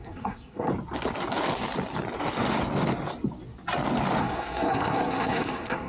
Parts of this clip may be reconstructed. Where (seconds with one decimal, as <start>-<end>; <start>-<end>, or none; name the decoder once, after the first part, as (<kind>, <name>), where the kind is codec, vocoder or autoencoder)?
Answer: 0.0-0.7 (codec, SNAC); 4.2-5.9